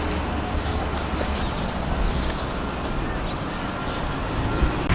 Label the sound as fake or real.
real